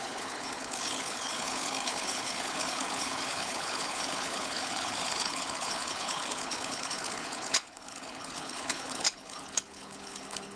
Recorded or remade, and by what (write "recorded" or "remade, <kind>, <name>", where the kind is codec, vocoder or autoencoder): remade, codec, HILCodec